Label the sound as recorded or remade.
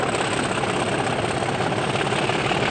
recorded